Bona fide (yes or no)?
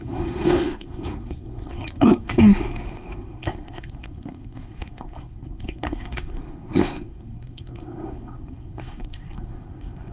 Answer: no